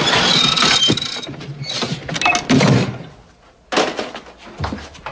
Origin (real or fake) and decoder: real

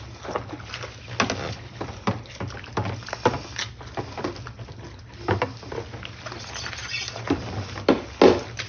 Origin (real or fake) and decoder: real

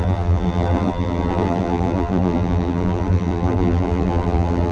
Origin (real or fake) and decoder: fake, vocoder, BigVGAN v2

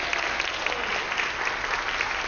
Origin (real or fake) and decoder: real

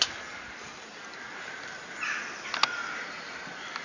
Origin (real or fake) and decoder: real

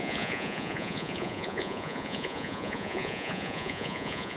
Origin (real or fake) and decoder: fake, vocoder, Vocos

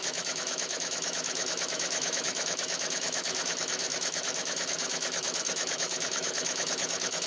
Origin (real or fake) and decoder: fake, autoencoder, DAC-VAE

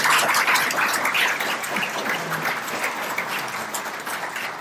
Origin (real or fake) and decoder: real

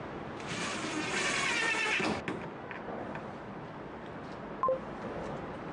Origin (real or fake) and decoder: real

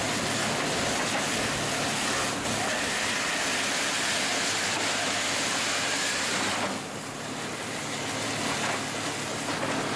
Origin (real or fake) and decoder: real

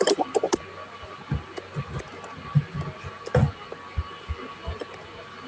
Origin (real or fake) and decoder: real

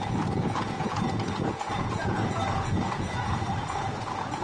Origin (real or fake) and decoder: fake, vocoder, Vocos